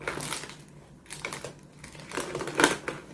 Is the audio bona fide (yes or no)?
yes